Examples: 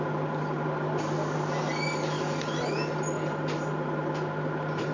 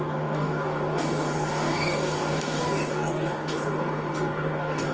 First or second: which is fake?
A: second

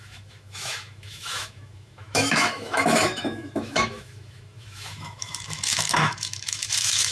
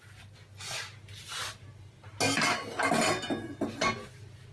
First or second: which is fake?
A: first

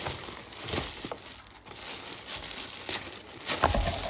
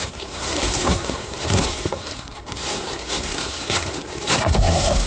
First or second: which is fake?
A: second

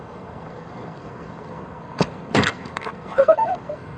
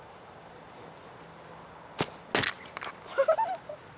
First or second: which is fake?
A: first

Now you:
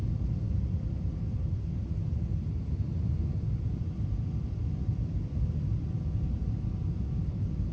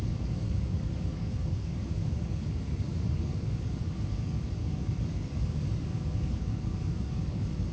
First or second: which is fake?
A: second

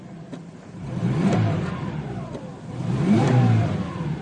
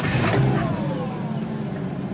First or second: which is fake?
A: first